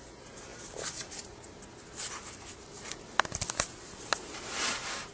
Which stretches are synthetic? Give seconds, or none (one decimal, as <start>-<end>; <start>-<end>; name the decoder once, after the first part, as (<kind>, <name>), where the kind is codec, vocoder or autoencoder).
0.5-2.9 (vocoder, BigVGAN v2); 4.1-5.1